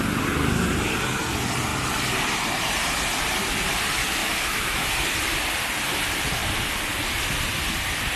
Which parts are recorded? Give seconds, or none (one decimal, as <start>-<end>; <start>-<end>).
0.0-4.2; 4.9-8.2